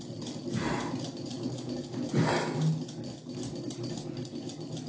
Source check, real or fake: real